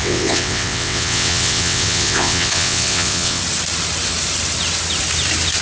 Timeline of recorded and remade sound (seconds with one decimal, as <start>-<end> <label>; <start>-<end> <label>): 0.0-3.4 remade; 3.4-5.6 recorded